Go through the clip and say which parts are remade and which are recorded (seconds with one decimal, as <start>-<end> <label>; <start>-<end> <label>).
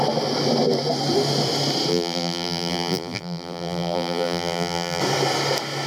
0.0-1.9 recorded; 1.9-5.0 remade; 5.0-5.9 recorded